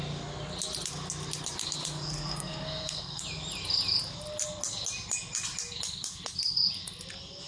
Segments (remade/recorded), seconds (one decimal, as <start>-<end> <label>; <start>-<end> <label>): 0.0-2.3 recorded; 2.3-3.2 remade; 3.2-7.5 recorded